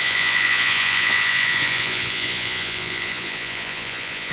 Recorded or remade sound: remade